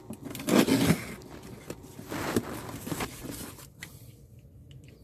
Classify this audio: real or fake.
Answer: real